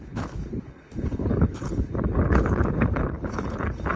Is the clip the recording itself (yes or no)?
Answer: no